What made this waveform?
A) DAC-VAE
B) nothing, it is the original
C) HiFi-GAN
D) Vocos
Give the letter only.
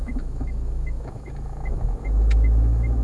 A